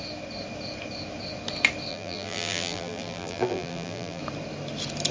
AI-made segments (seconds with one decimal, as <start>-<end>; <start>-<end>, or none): 1.9-4.2